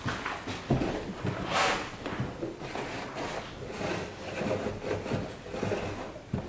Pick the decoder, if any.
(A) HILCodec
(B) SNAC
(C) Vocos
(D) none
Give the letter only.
D